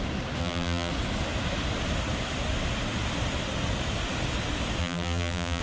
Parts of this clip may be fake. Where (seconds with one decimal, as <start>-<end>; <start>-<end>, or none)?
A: 0.4-0.9; 4.8-5.6